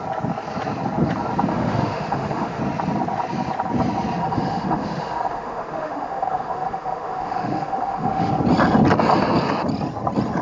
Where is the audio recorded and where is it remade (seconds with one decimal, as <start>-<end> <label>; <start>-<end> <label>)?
0.0-1.5 recorded; 1.5-2.6 remade; 2.6-4.2 recorded; 4.2-8.3 remade; 8.3-10.4 recorded